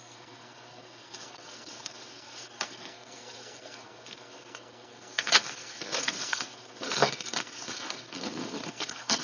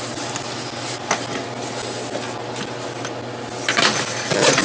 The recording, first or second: second